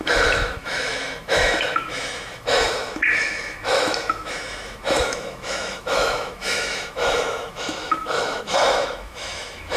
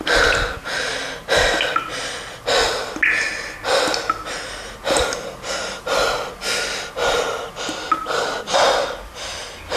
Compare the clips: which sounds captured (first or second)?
second